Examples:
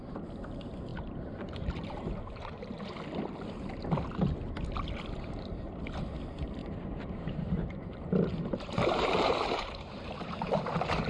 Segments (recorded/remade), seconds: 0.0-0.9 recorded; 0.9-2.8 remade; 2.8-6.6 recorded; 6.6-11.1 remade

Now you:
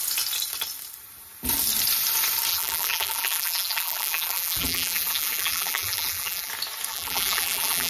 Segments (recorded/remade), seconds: 0.0-2.5 recorded; 2.5-6.5 remade; 6.5-6.9 recorded; 6.9-7.9 remade

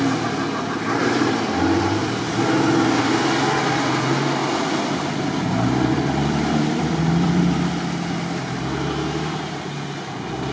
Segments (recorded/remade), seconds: 0.0-1.0 recorded; 1.0-2.2 remade; 2.2-4.4 recorded; 4.4-7.4 remade; 7.4-10.5 recorded

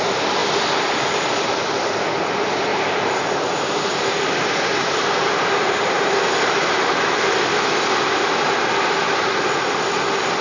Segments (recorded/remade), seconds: 0.0-2.7 recorded; 2.7-7.9 remade; 7.9-10.4 recorded

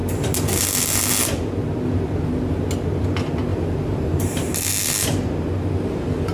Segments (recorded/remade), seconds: 0.0-3.5 recorded; 3.5-4.5 remade; 4.5-6.3 recorded

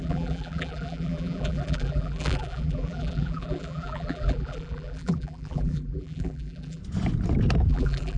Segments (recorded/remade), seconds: 0.0-6.8 remade; 6.8-7.7 recorded; 7.7-8.2 remade

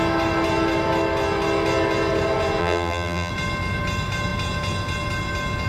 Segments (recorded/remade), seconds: 0.0-2.6 recorded; 2.6-3.3 remade; 3.3-5.7 recorded